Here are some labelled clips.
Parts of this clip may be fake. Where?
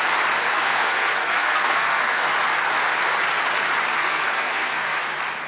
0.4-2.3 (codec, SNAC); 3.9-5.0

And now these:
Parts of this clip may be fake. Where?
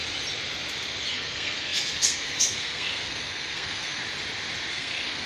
1.1-4.0 (codec, SNAC); 4.7-5.3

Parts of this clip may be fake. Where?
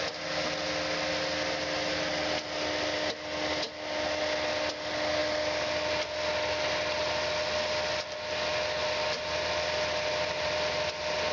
none